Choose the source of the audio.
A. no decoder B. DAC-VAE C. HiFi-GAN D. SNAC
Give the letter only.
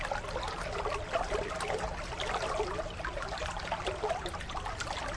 A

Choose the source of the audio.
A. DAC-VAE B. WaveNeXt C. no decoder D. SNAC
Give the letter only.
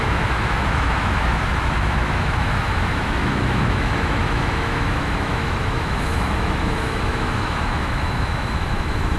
A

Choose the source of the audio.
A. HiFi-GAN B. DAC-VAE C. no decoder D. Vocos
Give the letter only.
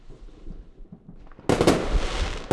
C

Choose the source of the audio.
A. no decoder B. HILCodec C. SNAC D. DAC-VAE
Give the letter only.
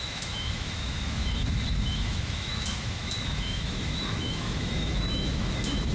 D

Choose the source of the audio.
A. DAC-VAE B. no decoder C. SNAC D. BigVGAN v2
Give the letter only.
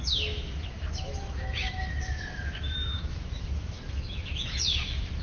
A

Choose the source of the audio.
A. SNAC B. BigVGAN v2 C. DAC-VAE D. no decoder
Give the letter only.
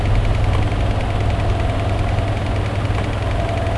D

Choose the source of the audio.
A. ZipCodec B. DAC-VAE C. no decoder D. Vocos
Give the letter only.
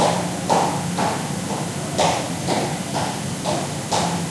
C